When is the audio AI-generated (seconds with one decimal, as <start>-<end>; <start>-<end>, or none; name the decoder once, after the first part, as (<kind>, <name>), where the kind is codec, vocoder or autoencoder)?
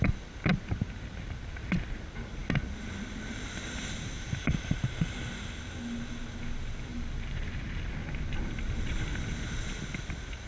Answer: 6.9-7.8 (vocoder, BigVGAN v2)